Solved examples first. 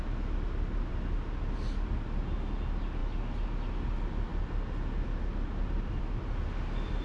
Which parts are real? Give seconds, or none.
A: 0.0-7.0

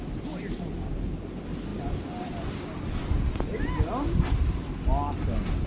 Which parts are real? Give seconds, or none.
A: 0.0-5.7